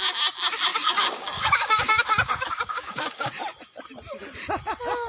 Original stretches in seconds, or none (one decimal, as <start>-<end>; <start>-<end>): 0.0-0.7; 3.3-5.1